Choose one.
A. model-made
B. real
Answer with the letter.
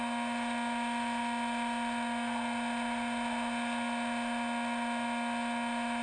B